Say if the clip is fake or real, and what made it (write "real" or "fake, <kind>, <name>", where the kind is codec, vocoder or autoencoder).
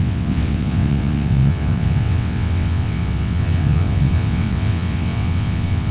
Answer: fake, vocoder, WaveNeXt